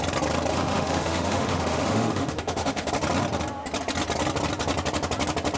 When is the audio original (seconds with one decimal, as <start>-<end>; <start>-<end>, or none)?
0.0-0.5; 2.9-5.6

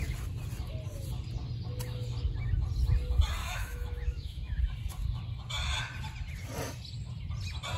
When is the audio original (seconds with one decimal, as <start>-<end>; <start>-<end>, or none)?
0.0-3.4; 4.6-7.8

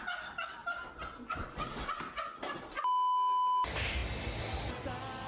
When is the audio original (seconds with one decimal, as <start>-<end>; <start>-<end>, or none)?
0.0-5.3

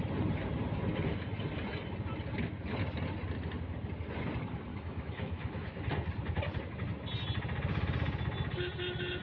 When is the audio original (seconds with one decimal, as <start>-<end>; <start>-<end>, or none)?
0.0-4.7; 5.8-9.2

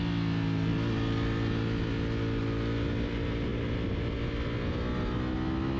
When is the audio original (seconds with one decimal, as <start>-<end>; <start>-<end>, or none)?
0.0-5.8

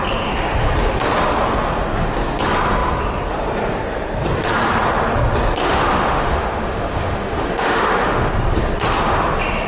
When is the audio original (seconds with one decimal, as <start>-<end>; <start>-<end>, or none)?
0.0-5.6; 8.3-9.7

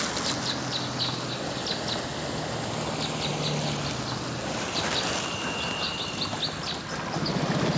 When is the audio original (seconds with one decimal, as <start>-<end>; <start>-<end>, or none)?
0.0-7.8

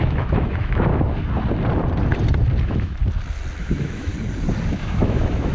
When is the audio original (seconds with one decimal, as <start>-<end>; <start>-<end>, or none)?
0.9-2.6; 3.0-3.6; 4.1-4.7